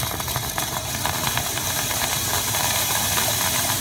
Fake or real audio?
fake